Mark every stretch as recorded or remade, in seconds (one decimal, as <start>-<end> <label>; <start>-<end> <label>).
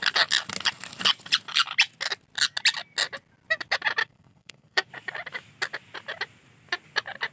0.0-4.0 recorded; 4.0-4.9 remade; 4.9-7.3 recorded